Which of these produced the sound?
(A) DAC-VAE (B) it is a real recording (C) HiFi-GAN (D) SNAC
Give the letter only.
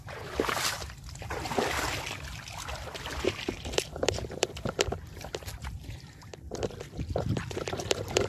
B